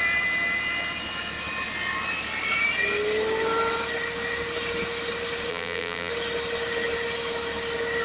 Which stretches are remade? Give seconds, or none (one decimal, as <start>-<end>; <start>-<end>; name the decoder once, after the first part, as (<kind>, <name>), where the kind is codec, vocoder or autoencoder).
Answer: 5.5-6.1 (vocoder, BigVGAN v2)